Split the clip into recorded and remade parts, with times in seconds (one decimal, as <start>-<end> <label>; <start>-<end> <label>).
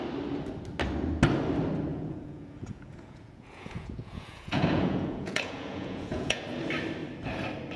0.0-1.9 recorded; 1.9-6.4 remade; 6.4-7.8 recorded